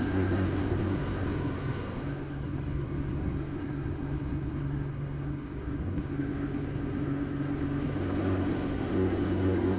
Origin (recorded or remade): remade